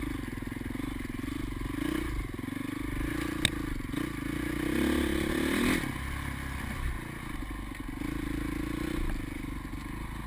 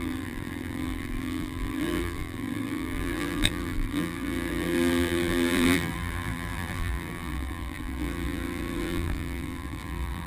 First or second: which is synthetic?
second